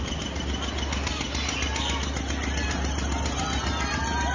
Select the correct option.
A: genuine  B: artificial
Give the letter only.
A